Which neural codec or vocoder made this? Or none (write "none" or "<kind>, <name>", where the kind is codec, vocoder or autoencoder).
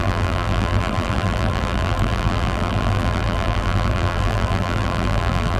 vocoder, BigVGAN v2